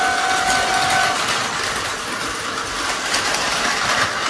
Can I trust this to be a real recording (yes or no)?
yes